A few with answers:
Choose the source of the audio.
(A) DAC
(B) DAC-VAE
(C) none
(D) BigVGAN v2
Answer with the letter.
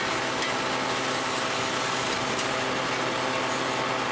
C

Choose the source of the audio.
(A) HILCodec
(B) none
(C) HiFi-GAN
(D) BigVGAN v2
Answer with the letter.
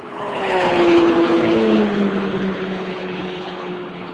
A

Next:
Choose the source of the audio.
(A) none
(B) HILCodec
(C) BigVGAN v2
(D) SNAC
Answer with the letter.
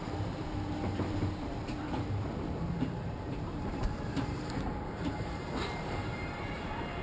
C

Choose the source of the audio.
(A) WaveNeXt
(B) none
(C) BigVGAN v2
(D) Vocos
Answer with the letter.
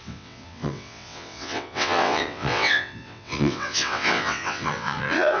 A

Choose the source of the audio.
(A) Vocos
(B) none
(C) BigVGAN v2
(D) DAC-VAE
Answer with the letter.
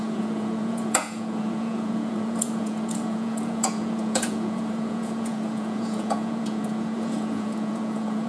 A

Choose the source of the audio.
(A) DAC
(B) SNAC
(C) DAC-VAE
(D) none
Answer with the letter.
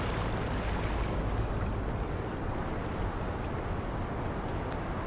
D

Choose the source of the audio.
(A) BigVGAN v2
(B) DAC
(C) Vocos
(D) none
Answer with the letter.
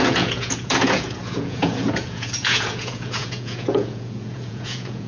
C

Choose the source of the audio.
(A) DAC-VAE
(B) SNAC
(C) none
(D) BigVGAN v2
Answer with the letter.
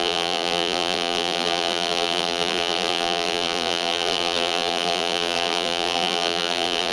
D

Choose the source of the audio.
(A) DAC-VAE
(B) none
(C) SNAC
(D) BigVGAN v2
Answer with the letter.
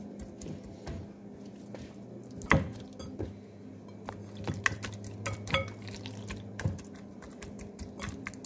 B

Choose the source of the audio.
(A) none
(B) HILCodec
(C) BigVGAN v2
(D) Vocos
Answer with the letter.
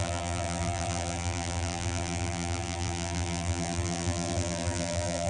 C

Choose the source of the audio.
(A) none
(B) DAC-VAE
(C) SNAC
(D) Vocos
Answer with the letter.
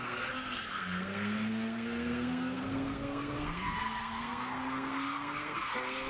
C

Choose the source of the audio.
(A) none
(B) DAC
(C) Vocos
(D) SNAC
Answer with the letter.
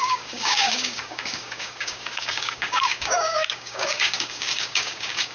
B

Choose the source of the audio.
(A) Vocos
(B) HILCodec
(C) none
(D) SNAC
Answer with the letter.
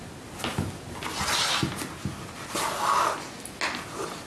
C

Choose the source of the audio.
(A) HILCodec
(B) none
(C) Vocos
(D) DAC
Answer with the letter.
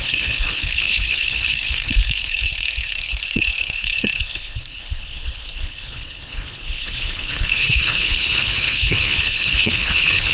A